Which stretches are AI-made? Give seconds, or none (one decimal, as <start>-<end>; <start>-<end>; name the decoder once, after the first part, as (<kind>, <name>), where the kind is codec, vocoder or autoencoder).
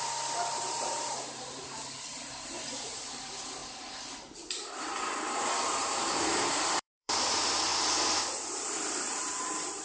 0.0-3.6 (vocoder, BigVGAN v2); 6.2-7.7; 8.2-9.8